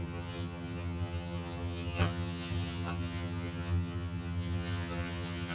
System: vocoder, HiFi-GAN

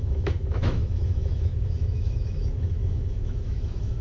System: autoencoder, DAC-VAE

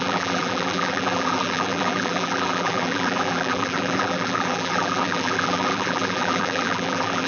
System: vocoder, BigVGAN v2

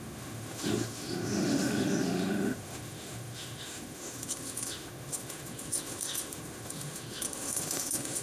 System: autoencoder, DAC-VAE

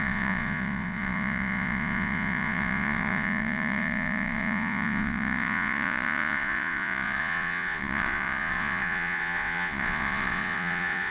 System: vocoder, Vocos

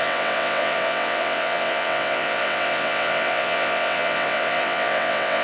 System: vocoder, WaveNeXt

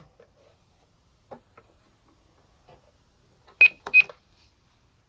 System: none